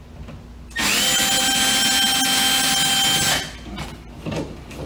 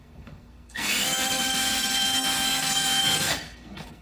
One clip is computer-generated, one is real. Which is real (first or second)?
first